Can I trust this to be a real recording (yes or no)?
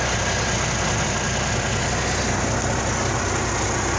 yes